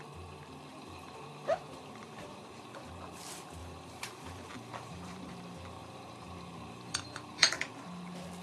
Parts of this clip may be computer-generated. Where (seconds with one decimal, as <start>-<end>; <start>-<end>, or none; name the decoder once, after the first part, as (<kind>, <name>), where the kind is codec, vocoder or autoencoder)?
0.7-2.9 (vocoder, BigVGAN v2); 3.6-5.3; 5.8-7.7